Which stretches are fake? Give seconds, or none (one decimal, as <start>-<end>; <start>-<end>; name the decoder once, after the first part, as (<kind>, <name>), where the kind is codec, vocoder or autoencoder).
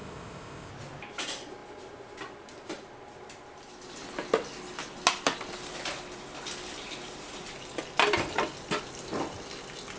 0.0-0.7 (codec, ZipCodec)